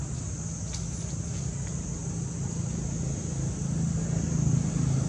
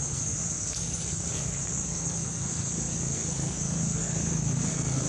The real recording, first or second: first